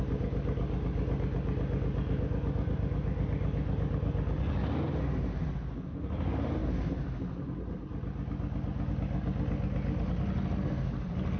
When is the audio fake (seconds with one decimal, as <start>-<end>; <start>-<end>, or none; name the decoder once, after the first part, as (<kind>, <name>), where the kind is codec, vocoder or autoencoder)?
none